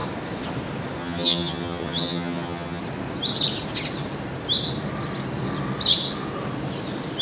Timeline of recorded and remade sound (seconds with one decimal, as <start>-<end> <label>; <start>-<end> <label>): 0.0-1.0 recorded; 1.0-2.8 remade; 2.8-7.2 recorded